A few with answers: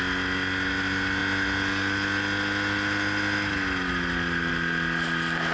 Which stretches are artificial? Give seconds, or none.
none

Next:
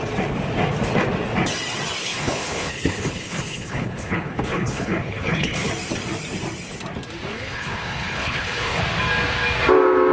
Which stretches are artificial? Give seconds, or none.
2.0-5.7 (codec, HILCodec); 7.3-8.8